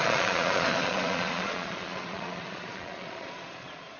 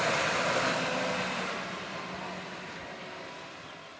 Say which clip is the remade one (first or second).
first